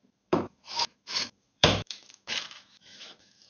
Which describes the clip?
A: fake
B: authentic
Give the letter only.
A